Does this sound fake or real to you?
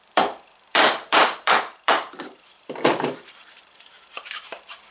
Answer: fake